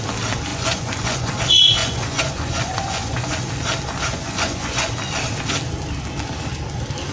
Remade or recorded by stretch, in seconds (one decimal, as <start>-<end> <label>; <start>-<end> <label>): 0.0-0.5 recorded; 0.5-1.3 remade; 1.3-1.8 recorded; 1.8-3.5 remade; 3.5-4.1 recorded; 4.1-4.9 remade; 4.9-7.1 recorded